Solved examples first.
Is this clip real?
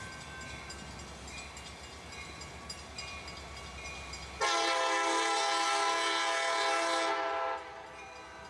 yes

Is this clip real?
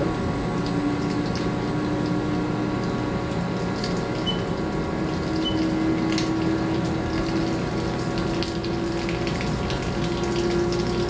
yes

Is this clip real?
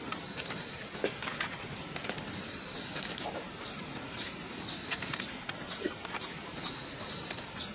no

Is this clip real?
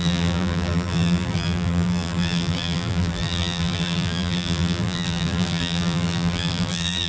no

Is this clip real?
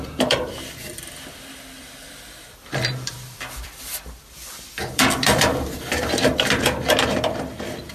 no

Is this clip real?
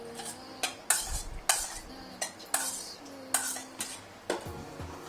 yes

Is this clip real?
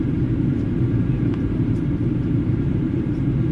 no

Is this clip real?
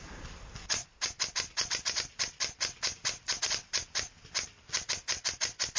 yes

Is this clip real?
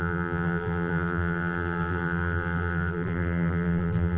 no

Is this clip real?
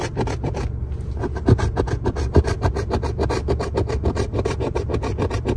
yes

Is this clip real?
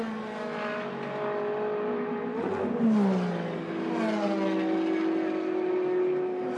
yes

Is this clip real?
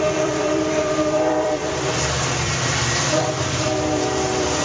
no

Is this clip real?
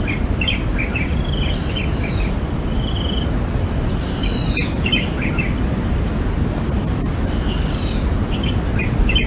yes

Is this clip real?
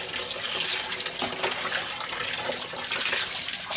yes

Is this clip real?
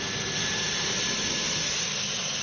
yes